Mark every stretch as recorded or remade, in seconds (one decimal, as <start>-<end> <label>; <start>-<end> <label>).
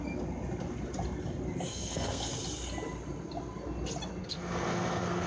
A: 0.0-1.7 recorded; 1.7-2.3 remade; 2.3-4.2 recorded; 4.2-5.3 remade